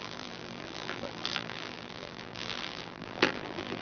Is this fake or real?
fake